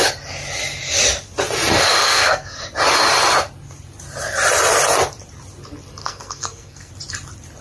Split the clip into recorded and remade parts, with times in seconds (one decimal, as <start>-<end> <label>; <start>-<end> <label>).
0.0-2.0 recorded; 2.0-2.6 remade; 2.6-6.0 recorded; 6.0-6.9 remade; 6.9-7.6 recorded